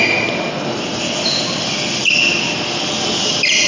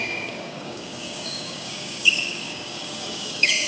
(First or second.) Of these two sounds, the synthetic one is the second